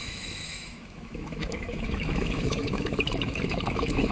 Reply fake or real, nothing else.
fake